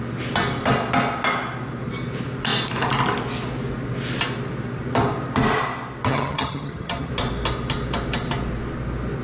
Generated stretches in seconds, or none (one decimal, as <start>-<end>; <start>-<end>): 6.1-7.1